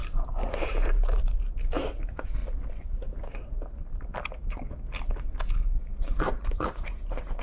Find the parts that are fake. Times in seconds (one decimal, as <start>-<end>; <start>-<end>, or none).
0.6-2.4; 3.0-4.1; 6.0-7.4